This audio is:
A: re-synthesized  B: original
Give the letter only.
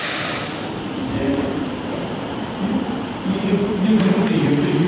A